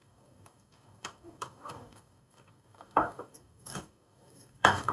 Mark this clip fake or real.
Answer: fake